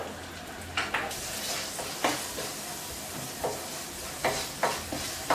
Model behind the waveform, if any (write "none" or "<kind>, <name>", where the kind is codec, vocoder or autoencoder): none